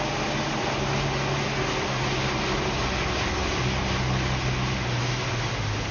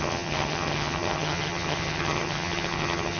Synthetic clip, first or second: second